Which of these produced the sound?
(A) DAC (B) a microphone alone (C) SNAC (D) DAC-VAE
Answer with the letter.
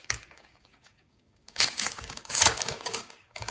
A